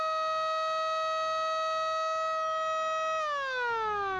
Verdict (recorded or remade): recorded